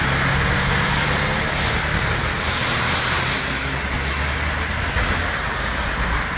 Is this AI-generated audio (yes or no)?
no